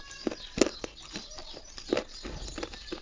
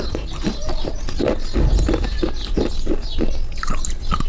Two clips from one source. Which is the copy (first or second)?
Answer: first